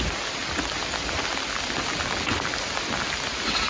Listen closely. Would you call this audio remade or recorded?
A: recorded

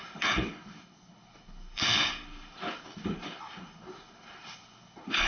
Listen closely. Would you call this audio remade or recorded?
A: remade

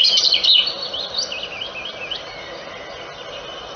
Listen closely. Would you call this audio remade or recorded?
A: recorded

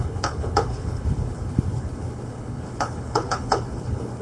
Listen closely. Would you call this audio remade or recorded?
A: remade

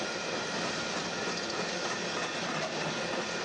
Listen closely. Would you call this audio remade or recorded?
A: recorded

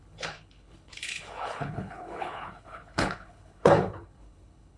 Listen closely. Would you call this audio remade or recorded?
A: remade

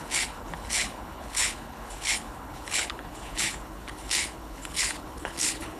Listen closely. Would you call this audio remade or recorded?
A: remade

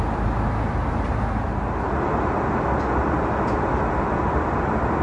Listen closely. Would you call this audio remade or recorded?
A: recorded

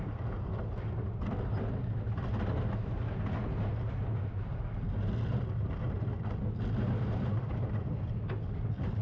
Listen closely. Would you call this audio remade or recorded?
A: recorded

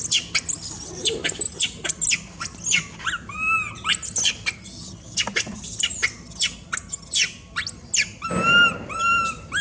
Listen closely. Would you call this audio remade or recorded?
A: recorded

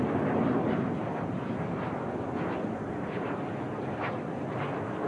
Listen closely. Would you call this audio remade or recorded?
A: recorded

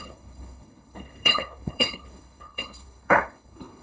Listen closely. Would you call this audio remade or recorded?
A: remade